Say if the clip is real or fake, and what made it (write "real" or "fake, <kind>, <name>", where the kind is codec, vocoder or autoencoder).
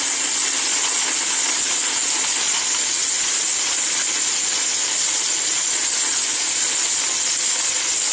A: real